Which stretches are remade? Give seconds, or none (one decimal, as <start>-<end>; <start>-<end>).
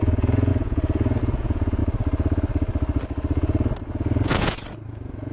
0.0-1.8; 3.9-5.3